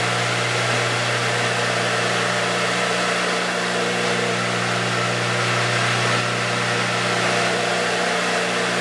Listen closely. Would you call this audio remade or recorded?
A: recorded